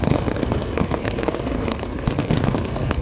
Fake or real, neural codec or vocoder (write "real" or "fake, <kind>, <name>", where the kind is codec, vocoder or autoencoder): fake, codec, SNAC